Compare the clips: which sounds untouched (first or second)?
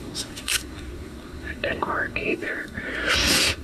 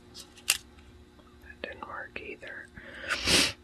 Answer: second